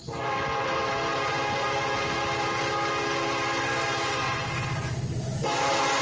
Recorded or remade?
recorded